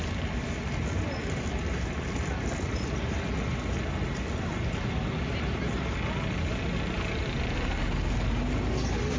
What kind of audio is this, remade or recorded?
recorded